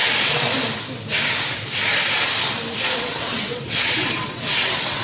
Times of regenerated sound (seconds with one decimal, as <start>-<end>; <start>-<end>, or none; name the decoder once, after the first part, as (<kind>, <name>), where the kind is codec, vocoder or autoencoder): 3.0-5.0 (vocoder, WaveNeXt)